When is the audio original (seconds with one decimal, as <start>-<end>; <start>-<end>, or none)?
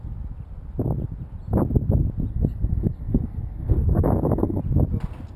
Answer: 0.0-2.3; 4.6-5.4